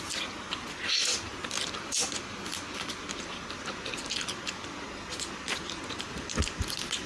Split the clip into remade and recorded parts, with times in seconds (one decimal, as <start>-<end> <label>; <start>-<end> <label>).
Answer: 0.0-7.1 recorded